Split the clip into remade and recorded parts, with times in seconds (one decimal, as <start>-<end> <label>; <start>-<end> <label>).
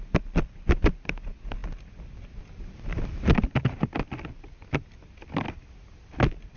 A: 0.0-6.6 recorded